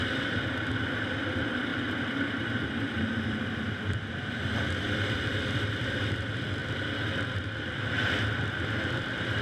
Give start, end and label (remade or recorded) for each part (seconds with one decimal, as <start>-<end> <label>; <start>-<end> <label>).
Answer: 0.0-6.6 remade; 6.6-8.0 recorded; 8.0-9.4 remade